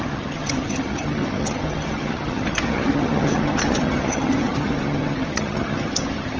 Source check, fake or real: fake